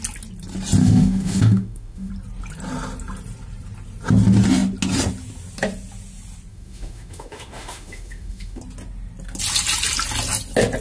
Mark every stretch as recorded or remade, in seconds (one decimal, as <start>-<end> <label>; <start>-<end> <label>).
0.0-0.8 recorded; 0.8-2.1 remade; 2.1-6.5 recorded; 6.5-8.6 remade; 8.6-10.8 recorded